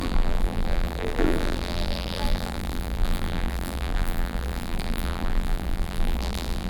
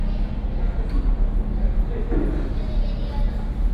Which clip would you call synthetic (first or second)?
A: first